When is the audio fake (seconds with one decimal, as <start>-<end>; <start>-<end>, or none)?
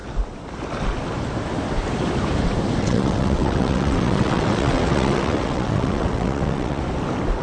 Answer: 2.8-6.8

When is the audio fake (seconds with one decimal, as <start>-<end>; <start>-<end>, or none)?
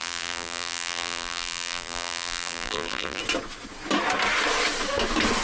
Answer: 0.0-3.2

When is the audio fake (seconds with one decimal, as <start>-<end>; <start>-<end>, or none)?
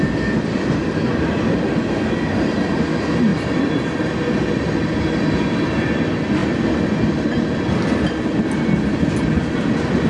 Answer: none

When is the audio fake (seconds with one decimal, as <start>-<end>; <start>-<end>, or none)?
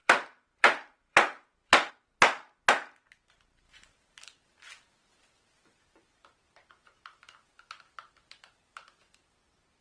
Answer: 0.0-1.9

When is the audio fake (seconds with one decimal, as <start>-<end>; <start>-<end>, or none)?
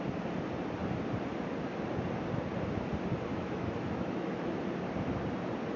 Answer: 3.3-4.6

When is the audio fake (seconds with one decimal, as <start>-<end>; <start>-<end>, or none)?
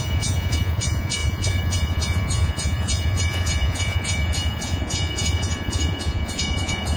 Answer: 0.0-7.0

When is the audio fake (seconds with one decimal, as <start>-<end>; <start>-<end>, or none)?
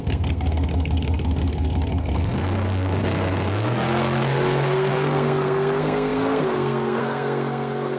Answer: 0.0-8.0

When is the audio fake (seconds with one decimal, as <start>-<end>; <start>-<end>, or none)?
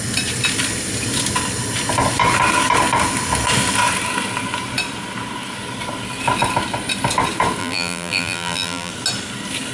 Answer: 7.6-8.9